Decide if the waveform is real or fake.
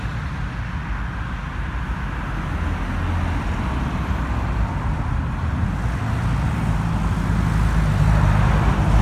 real